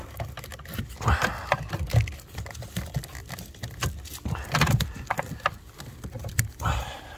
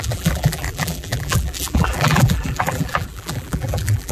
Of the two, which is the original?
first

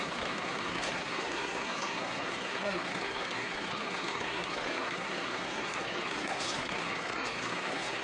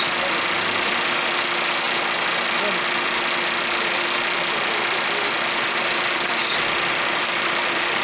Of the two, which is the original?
second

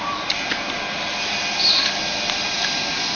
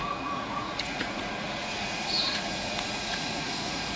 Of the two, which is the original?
first